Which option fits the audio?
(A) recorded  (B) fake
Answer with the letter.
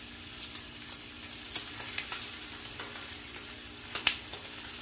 A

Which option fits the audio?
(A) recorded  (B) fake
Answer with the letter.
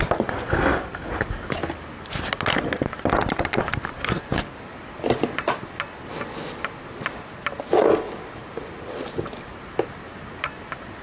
A